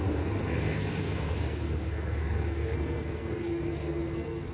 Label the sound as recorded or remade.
remade